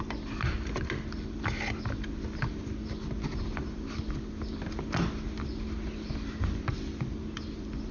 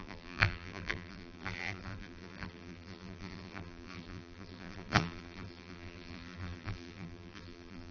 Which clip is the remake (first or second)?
second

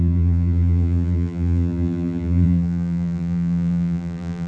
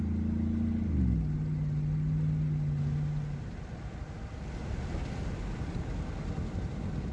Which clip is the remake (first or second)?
first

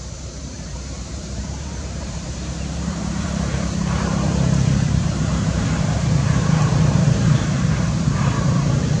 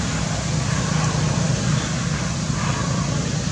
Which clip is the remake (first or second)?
first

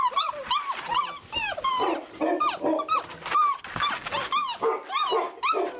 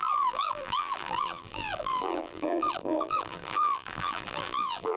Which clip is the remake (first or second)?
second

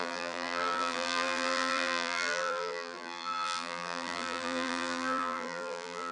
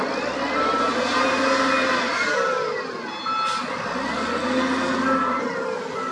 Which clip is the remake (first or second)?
first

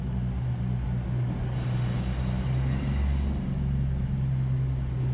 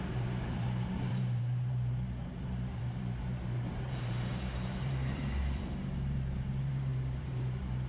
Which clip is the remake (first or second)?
second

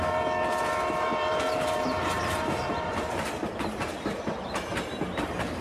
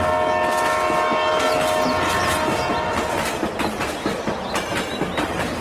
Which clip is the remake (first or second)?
first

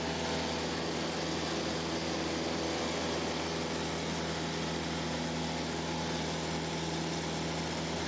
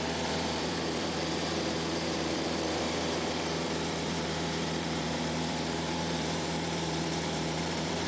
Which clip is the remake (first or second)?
second